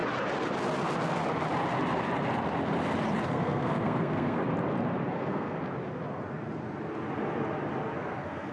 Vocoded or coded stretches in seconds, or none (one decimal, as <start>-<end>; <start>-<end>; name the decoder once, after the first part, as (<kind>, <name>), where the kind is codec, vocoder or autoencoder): 3.2-4.4 (codec, SNAC); 5.1-5.6; 8.0-8.5